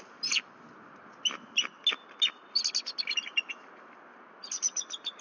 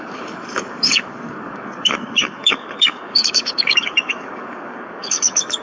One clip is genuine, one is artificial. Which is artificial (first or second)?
second